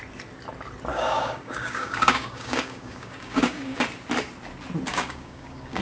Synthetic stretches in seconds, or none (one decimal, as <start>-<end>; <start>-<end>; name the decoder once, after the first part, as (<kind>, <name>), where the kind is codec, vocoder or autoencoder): 0.9-3.8 (codec, DAC); 4.9-5.8

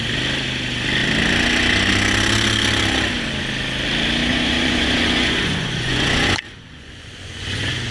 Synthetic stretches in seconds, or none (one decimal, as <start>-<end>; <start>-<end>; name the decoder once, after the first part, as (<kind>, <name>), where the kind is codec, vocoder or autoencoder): 4.3-7.9 (vocoder, Vocos)

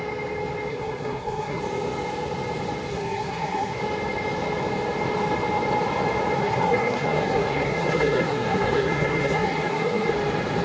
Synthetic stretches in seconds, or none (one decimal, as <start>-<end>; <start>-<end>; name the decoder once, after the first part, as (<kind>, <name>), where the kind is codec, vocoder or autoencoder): 0.7-1.6 (codec, SNAC); 2.9-3.8; 6.4-10.1